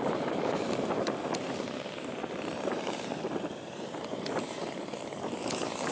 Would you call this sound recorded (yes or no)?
no